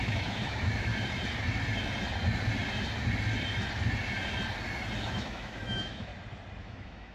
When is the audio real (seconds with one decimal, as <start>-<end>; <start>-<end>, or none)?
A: 0.9-5.0; 6.1-6.6

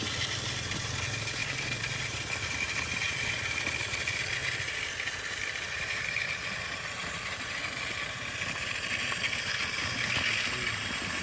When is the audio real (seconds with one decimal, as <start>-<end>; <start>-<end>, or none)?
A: 0.0-1.4; 2.7-11.2

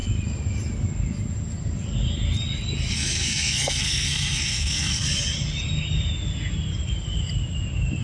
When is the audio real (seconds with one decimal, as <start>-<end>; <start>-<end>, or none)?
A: 0.0-2.9; 5.0-8.0

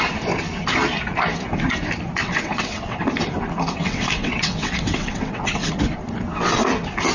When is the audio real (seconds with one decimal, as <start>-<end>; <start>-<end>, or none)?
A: 0.0-2.2; 3.0-3.8; 5.7-7.1

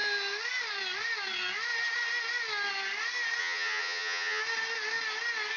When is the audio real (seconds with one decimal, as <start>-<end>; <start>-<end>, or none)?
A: 0.0-3.4; 4.4-5.6

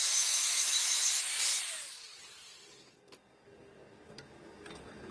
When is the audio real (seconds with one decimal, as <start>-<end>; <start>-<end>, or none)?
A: 1.1-5.1